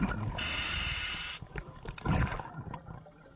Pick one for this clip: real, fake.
real